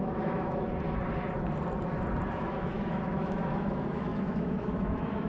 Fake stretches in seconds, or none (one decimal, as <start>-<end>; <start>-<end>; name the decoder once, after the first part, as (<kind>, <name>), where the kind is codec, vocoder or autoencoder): 0.0-0.7 (autoencoder, DAC-VAE); 2.3-5.3